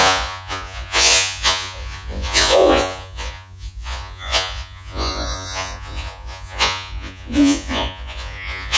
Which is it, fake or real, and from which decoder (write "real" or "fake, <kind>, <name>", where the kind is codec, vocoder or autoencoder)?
fake, vocoder, Vocos